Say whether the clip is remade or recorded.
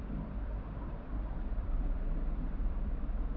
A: remade